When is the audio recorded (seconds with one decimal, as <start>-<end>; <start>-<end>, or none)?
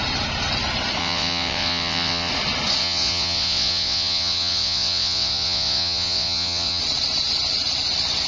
0.0-1.0; 2.3-2.8; 6.8-8.3